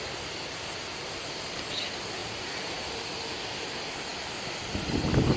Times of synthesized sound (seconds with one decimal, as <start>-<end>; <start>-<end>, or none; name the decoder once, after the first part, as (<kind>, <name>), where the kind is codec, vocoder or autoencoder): 2.2-2.8 (vocoder, BigVGAN v2); 4.1-4.7